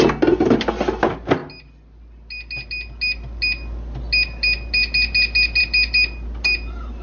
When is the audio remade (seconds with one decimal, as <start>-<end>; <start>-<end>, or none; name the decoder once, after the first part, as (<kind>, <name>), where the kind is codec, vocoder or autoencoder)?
none